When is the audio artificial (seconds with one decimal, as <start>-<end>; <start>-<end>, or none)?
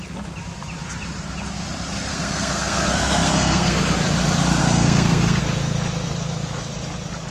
2.1-3.8; 4.6-5.4